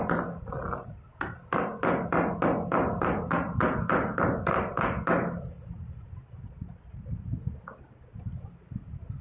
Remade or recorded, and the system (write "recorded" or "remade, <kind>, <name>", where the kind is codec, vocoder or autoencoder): recorded